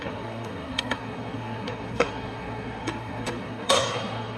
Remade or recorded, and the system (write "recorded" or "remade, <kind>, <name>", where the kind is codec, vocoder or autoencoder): remade, codec, SNAC